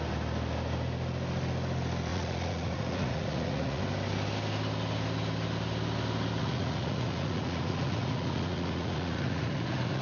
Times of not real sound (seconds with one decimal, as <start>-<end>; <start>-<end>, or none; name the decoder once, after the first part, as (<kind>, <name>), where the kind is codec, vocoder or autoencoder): 2.1-3.8 (vocoder, Vocos); 6.4-10.0